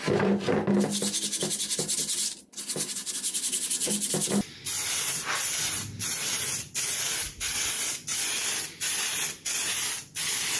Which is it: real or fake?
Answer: real